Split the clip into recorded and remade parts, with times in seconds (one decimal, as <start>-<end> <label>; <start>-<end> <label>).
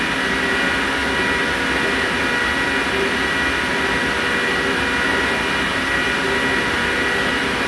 0.0-7.7 recorded